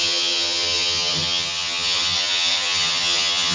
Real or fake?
fake